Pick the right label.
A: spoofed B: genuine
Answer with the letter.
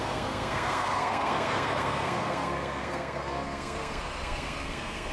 A